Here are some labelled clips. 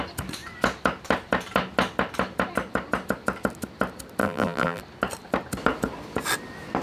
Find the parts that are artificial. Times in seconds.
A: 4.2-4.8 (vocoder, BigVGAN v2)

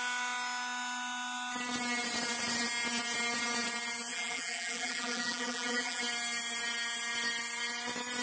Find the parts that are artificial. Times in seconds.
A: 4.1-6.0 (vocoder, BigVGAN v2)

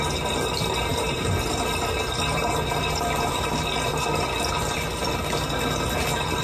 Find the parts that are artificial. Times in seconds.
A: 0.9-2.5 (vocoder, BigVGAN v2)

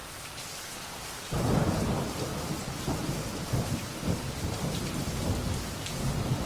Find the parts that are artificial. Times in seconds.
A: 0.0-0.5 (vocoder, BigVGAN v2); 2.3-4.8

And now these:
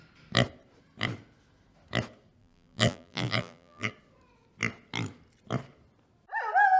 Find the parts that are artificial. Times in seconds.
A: 2.4-3.9 (vocoder, BigVGAN v2)

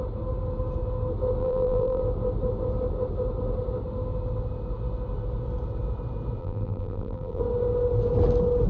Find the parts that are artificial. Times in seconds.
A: 1.4-2.0 (vocoder, BigVGAN v2); 6.4-7.4

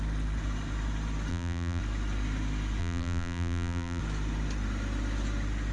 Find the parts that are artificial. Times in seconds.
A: 1.3-1.8 (vocoder, BigVGAN v2); 2.8-4.0